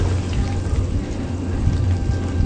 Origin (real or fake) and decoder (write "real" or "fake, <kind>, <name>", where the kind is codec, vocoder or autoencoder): real